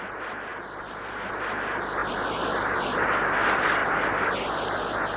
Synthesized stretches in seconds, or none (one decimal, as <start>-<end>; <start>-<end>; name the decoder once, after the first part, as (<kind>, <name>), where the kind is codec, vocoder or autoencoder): none